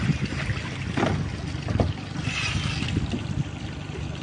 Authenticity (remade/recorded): recorded